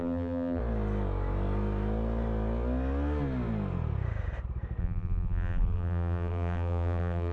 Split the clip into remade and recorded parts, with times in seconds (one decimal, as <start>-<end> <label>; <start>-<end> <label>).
0.0-0.6 remade; 0.6-4.8 recorded; 4.8-7.3 remade